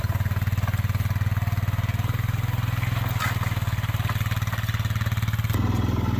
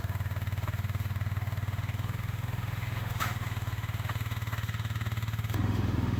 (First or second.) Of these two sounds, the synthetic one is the second